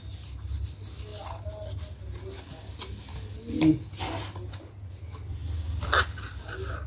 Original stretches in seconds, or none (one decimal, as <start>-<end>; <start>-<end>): 0.0-6.9